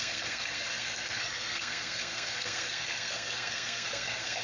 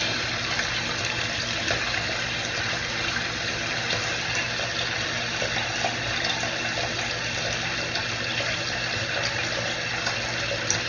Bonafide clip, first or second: second